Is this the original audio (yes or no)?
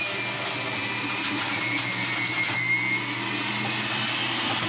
yes